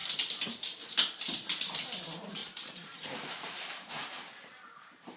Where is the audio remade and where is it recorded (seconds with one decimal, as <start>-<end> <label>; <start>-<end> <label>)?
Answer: 0.0-2.4 recorded; 2.4-3.9 remade; 3.9-5.2 recorded